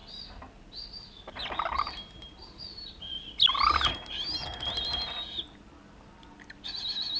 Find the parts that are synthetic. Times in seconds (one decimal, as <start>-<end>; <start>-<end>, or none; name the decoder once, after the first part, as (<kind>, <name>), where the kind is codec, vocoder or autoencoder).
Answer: none